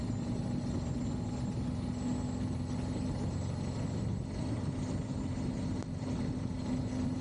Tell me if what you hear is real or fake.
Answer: real